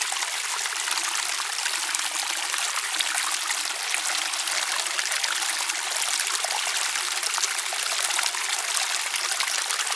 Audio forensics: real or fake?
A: real